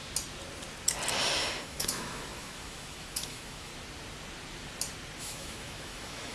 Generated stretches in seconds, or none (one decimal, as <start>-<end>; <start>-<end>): 1.4-3.7; 5.2-6.3